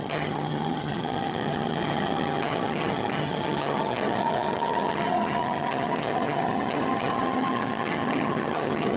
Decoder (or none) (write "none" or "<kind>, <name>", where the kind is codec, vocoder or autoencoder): vocoder, HiFi-GAN